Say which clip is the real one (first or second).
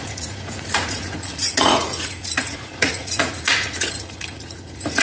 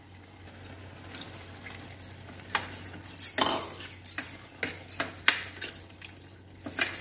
second